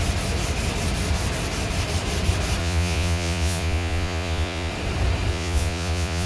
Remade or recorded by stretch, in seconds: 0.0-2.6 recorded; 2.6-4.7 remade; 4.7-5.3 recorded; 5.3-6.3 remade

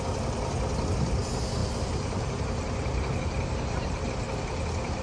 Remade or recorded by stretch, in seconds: 0.0-1.6 recorded; 1.6-4.1 remade; 4.1-5.0 recorded